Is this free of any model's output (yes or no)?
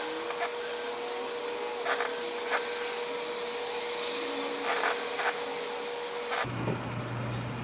yes